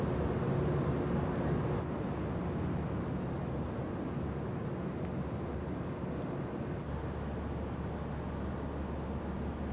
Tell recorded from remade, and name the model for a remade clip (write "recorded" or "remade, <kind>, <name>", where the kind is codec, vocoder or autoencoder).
recorded